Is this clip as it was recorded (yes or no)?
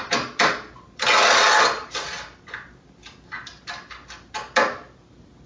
yes